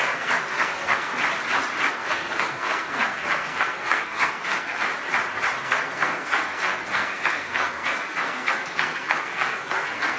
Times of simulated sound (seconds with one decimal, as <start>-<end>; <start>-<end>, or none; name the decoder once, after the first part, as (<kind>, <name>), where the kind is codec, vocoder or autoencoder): 0.0-1.1 (codec, SNAC); 1.9-4.9; 5.6-10.2